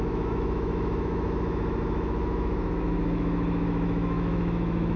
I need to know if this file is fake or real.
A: fake